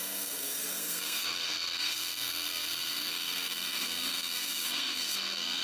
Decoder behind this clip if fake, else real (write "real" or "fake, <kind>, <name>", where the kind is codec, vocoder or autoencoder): fake, codec, SNAC